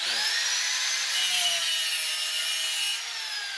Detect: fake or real real